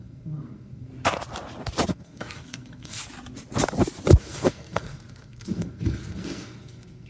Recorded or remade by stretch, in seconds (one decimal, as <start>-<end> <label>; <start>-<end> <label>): 0.0-0.9 remade; 0.9-1.9 recorded; 1.9-3.0 remade; 3.0-4.2 recorded; 4.2-7.1 remade